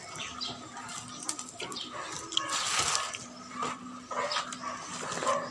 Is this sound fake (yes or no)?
no